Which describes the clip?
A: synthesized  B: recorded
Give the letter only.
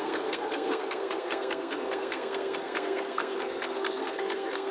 A